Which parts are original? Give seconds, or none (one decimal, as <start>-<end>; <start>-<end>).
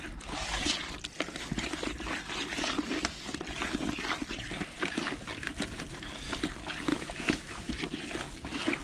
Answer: 0.0-6.9; 7.7-8.8